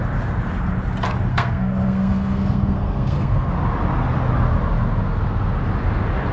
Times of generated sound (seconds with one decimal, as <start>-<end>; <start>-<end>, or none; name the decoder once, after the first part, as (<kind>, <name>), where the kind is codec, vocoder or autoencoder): 1.3-3.5 (codec, SNAC)